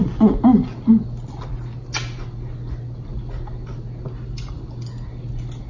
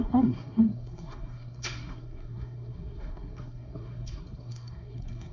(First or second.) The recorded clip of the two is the first